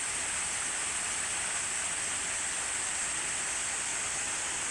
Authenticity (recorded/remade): recorded